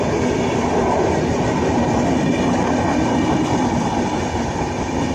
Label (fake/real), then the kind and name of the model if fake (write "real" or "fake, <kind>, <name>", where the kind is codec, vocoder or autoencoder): real